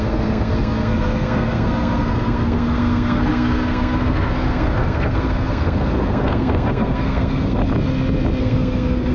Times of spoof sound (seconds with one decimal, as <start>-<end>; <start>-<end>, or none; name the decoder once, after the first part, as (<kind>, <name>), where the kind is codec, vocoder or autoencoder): 0.0-7.6 (codec, SNAC); 8.4-9.1